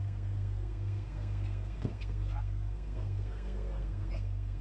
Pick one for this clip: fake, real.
fake